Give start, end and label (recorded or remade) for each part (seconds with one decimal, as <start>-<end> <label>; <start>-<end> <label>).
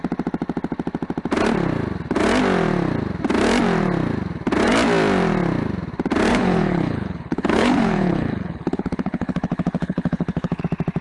0.0-6.3 recorded; 6.3-10.6 remade; 10.6-11.0 recorded